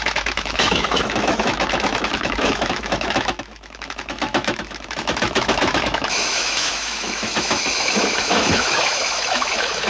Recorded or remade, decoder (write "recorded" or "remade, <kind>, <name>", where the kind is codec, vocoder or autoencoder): remade, autoencoder, DAC-VAE